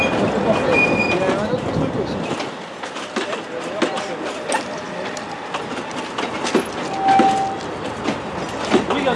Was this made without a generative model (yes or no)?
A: yes